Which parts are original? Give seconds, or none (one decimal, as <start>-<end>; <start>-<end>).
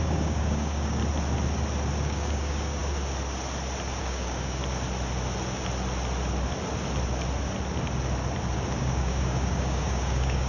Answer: 1.0-2.0; 2.8-4.0; 4.6-8.8